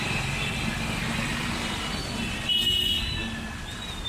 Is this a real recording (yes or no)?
yes